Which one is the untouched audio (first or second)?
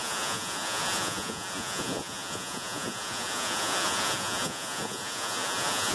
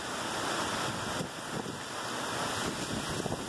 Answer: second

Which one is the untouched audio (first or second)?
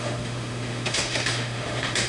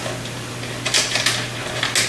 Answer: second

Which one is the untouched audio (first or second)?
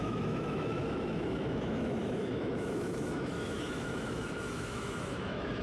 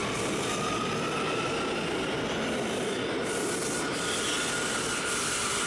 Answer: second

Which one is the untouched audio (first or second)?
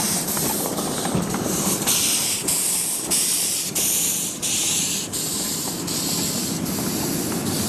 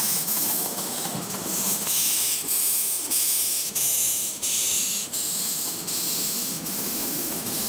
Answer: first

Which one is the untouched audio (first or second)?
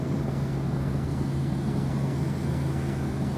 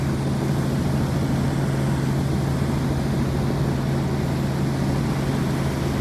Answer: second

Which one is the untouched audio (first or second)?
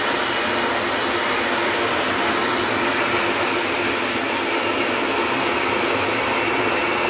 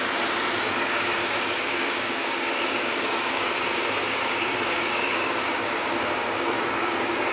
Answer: first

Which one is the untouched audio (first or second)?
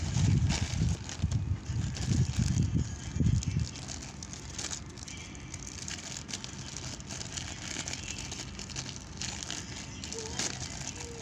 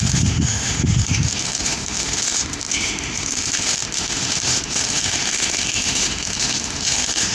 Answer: first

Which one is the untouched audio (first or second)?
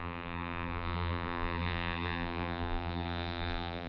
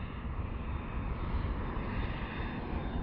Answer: second